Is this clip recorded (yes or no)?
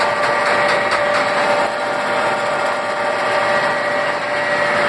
yes